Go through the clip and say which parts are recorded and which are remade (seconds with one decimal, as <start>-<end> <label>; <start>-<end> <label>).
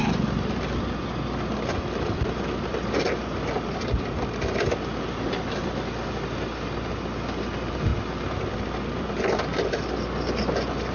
0.0-10.9 recorded